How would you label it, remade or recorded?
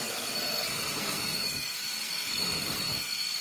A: remade